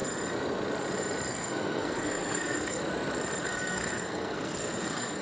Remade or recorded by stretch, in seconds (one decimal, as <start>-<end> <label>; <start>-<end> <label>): 0.0-1.3 recorded; 1.3-2.8 remade; 2.8-3.4 recorded; 3.4-5.2 remade